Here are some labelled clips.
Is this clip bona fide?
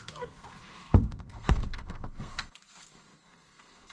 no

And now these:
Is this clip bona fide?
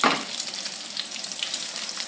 yes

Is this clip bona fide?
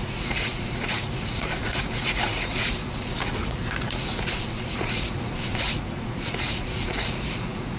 no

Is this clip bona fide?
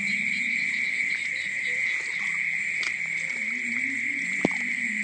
yes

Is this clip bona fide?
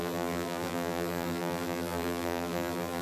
no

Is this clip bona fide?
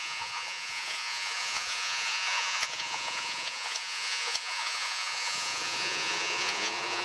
no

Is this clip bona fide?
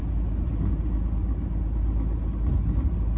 yes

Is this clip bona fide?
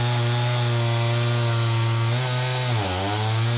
yes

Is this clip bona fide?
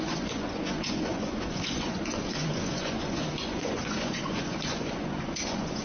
no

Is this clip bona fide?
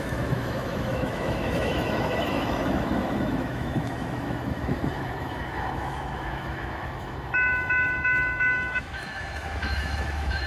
no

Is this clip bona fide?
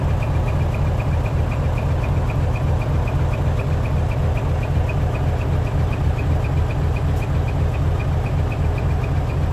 yes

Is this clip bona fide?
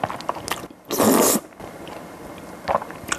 yes